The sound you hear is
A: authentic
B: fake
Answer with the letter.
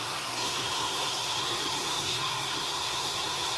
B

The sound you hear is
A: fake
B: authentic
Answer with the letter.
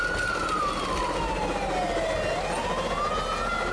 B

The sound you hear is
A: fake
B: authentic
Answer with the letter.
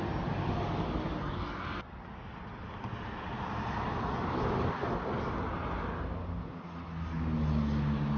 B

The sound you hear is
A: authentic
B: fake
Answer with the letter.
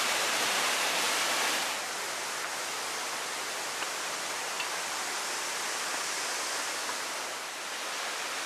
A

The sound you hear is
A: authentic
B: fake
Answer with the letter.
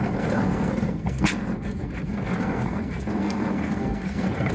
B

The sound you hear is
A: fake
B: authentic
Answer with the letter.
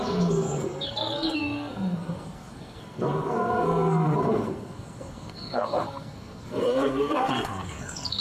A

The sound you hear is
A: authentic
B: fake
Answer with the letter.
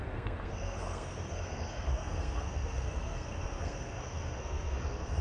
B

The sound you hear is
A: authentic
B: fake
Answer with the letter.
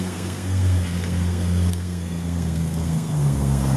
B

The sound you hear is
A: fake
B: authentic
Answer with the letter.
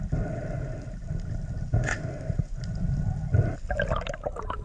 B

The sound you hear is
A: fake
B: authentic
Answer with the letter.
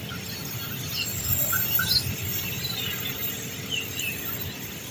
B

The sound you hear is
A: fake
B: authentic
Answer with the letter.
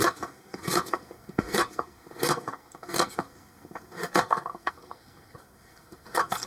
A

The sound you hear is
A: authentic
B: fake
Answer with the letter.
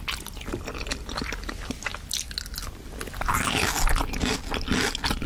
A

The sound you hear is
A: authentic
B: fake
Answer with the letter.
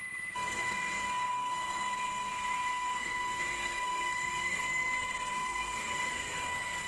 B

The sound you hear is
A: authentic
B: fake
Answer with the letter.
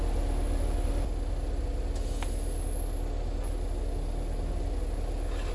A